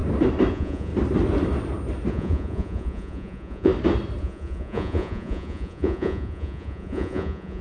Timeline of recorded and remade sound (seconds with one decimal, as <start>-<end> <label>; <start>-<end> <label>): 0.0-0.5 recorded; 0.5-0.9 remade; 0.9-2.1 recorded; 2.1-3.7 remade; 3.7-4.2 recorded; 4.2-7.6 remade